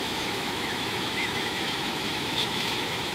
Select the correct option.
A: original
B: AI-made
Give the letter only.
B